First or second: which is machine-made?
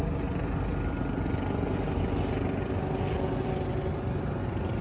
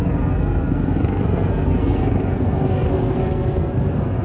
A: second